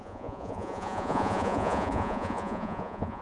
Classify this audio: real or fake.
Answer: fake